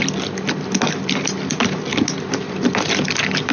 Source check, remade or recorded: recorded